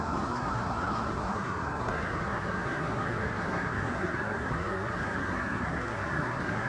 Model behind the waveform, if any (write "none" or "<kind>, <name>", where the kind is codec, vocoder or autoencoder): codec, SNAC